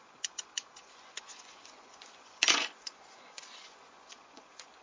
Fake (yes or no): yes